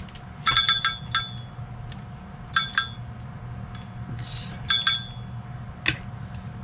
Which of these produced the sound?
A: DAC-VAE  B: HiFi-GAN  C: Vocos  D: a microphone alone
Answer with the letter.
D